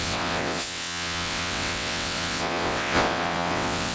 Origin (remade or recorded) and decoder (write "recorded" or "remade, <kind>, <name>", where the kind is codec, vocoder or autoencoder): remade, vocoder, WaveNeXt